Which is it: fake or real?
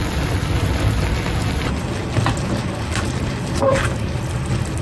real